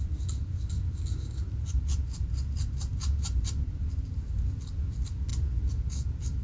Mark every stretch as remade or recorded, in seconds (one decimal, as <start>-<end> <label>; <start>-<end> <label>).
0.0-6.4 recorded